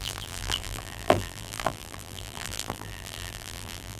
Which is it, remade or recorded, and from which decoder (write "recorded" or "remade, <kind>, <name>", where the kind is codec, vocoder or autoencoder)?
remade, vocoder, BigVGAN v2